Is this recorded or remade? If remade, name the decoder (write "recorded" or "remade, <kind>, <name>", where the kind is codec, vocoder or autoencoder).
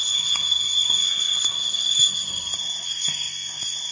remade, codec, SNAC